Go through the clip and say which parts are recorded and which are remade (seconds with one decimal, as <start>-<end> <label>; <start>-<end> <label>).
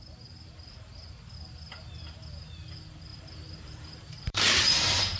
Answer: 0.0-3.1 recorded; 3.1-4.8 remade; 4.8-5.2 recorded